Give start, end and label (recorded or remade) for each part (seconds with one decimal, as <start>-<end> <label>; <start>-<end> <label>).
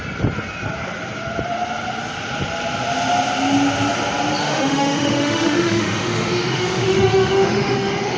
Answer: 0.0-4.4 recorded; 4.4-8.2 remade